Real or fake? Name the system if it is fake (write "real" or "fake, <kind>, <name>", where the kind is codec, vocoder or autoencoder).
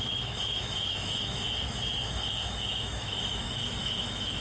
fake, autoencoder, DAC-VAE